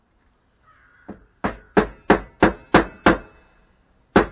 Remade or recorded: recorded